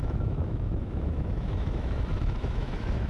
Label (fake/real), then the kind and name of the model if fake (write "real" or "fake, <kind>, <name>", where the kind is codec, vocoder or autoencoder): fake, autoencoder, DAC-VAE